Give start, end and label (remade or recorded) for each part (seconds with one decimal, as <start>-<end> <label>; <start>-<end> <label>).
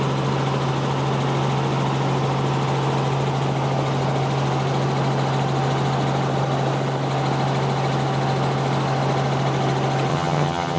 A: 0.0-10.1 recorded; 10.1-10.8 remade